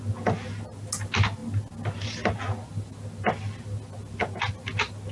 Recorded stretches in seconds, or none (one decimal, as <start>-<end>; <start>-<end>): 0.0-5.1